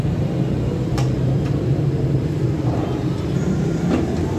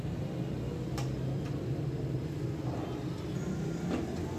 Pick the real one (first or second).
second